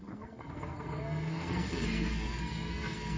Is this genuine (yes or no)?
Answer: no